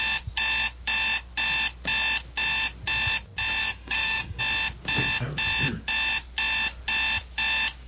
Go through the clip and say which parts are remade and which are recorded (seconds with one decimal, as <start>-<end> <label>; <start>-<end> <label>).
0.0-3.6 recorded; 3.6-4.4 remade; 4.4-7.9 recorded